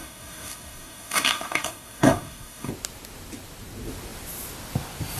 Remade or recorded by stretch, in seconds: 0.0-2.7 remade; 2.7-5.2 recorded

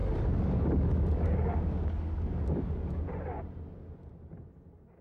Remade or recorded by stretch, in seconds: 0.0-3.0 remade; 3.0-5.0 recorded

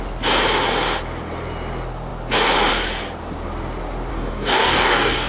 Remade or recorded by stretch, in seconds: 0.0-4.1 recorded; 4.1-5.3 remade